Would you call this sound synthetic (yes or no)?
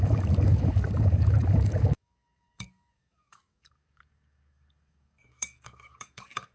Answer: yes